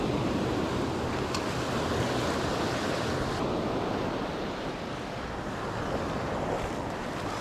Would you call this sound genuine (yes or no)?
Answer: yes